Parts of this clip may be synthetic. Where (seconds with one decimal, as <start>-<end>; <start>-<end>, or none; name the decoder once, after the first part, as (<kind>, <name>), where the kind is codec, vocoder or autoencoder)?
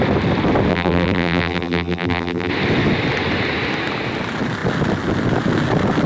0.7-2.5 (vocoder, BigVGAN v2)